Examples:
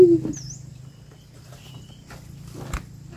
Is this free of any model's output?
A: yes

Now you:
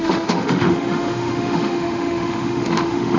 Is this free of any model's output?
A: no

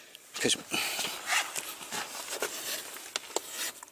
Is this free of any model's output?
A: yes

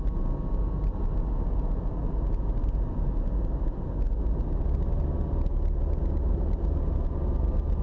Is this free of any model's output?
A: yes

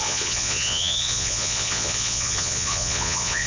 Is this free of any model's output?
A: no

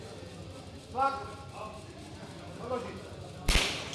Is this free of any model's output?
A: yes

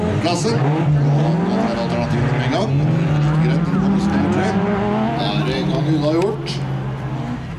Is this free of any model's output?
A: yes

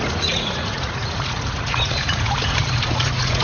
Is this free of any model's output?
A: no